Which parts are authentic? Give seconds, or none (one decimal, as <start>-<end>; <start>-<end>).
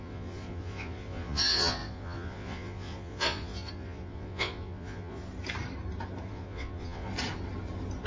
5.2-6.3; 7.1-8.1